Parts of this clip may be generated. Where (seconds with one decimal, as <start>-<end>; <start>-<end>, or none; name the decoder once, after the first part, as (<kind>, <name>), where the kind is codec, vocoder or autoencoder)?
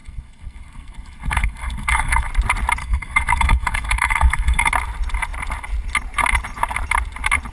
0.0-2.3 (codec, SNAC); 2.8-4.7